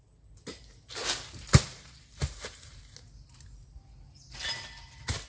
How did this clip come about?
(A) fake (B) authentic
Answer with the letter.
B